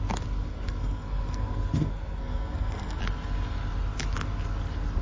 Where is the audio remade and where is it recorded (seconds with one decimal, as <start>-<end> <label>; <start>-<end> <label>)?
0.0-0.5 recorded; 0.5-3.0 remade; 3.0-5.0 recorded